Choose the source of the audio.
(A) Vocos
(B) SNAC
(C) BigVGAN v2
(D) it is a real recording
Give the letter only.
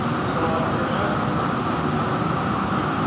D